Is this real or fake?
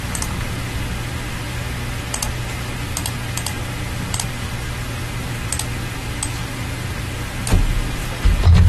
real